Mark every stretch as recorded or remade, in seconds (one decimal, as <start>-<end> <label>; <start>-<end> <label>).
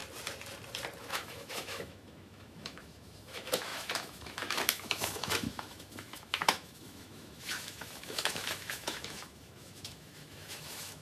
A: 0.0-1.0 recorded; 1.0-11.0 remade